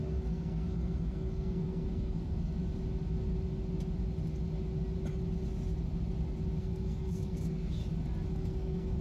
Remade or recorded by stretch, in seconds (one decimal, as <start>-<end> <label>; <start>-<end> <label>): 0.0-2.5 remade; 2.5-6.6 recorded; 6.6-7.8 remade; 7.8-8.3 recorded; 8.3-9.0 remade